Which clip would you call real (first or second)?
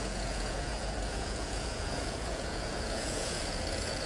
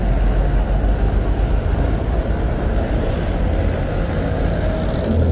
second